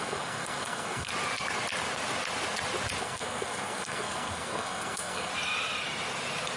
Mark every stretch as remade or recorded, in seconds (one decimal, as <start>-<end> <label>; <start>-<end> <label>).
0.0-1.1 remade; 1.1-3.0 recorded; 3.0-5.3 remade; 5.3-6.6 recorded